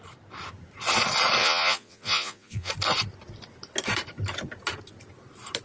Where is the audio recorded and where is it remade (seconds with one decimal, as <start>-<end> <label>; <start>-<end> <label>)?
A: 0.0-1.4 recorded; 1.4-2.7 remade; 2.7-5.6 recorded